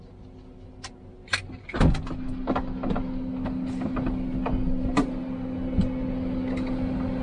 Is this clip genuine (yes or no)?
yes